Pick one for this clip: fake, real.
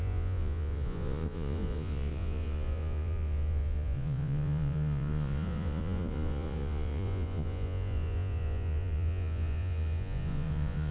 fake